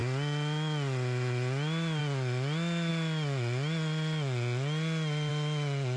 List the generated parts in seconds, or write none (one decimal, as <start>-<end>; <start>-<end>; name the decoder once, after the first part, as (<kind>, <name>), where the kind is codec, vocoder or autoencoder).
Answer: none